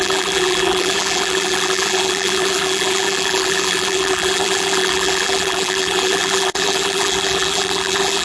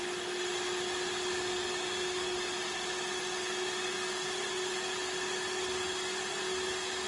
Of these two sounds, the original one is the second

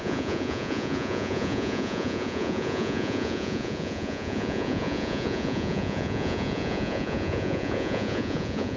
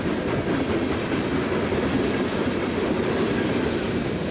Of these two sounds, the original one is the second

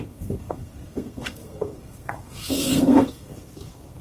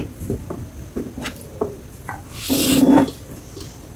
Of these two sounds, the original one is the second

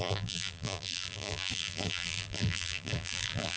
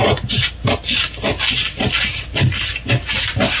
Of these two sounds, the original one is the second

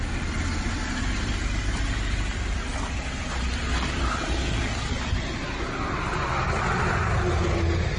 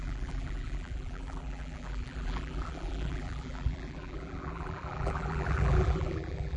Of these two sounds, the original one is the first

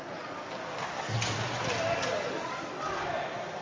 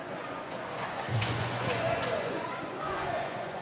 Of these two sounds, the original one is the first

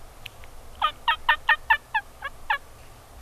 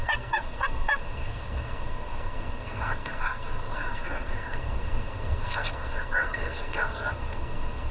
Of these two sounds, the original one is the first